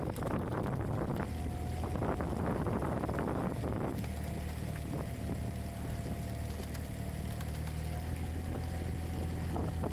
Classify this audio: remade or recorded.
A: recorded